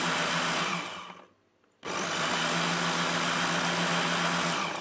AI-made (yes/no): no